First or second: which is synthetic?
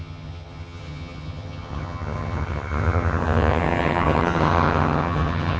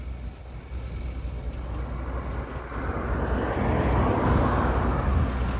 first